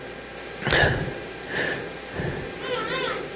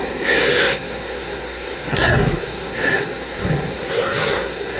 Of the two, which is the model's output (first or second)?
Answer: second